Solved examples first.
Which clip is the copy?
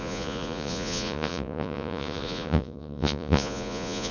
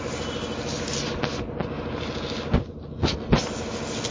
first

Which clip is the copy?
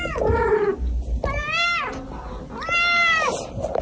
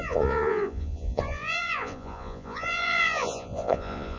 second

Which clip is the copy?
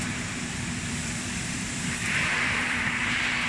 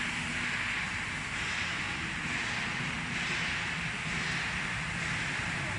first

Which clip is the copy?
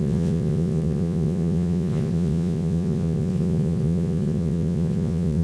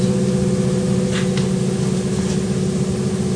first